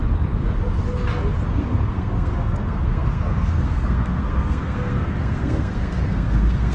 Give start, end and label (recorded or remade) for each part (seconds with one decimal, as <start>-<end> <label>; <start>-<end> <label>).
0.0-1.5 recorded; 1.5-6.7 remade